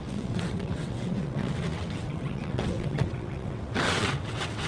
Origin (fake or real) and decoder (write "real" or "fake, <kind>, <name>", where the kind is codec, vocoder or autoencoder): fake, vocoder, WaveNeXt